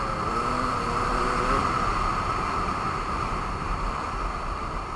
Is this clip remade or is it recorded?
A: recorded